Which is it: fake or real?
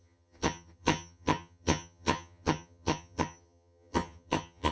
fake